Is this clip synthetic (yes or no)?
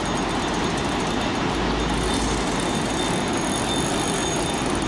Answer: no